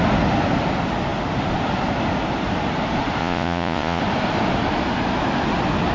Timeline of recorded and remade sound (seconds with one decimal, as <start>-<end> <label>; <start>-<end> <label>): 0.0-3.2 recorded; 3.2-4.0 remade; 4.0-5.9 recorded